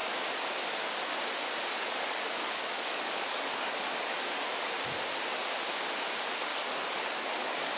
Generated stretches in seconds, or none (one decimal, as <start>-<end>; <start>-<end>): 1.8-4.4; 6.5-7.8